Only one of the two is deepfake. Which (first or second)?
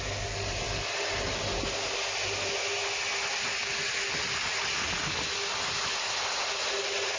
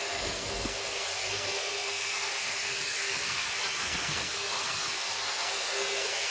second